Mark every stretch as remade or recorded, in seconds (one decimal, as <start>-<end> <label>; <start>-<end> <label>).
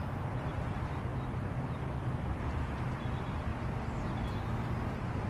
0.0-5.3 recorded